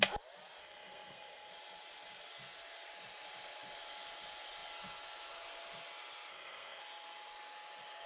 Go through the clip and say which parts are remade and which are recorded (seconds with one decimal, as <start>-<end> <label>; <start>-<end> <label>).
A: 0.0-0.6 recorded; 0.6-1.5 remade; 1.5-6.3 recorded; 6.3-6.8 remade; 6.8-8.1 recorded